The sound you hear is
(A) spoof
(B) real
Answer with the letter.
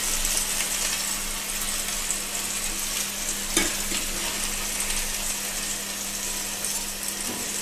B